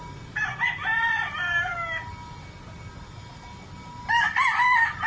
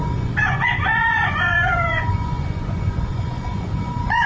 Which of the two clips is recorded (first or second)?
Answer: first